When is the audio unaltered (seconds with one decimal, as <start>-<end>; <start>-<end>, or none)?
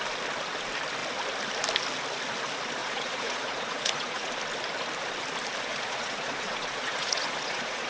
0.0-2.8; 4.3-5.7